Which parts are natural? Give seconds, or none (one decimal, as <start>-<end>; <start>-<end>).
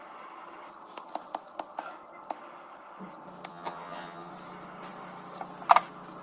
0.0-3.5; 4.3-6.2